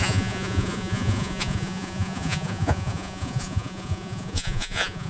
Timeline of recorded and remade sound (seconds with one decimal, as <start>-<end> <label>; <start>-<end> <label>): 0.0-5.1 remade